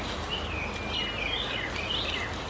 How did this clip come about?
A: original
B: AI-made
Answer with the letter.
A